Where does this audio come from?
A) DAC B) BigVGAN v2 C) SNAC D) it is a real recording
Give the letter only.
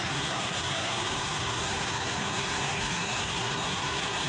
C